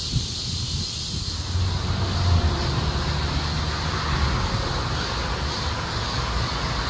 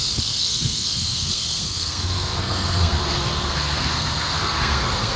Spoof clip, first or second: second